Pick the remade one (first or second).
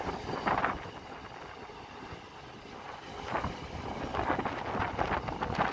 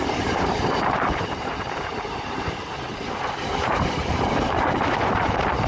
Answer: second